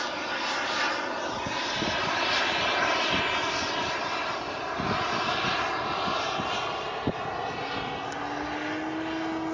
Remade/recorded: recorded